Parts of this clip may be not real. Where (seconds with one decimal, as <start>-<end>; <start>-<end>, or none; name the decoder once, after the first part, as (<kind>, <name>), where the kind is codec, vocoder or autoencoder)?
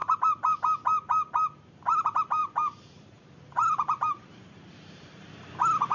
2.4-5.5 (vocoder, BigVGAN v2)